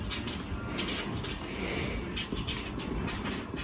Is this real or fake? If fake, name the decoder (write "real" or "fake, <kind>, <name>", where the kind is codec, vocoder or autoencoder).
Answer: real